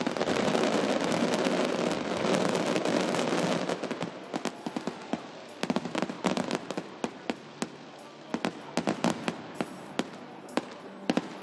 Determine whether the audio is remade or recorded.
recorded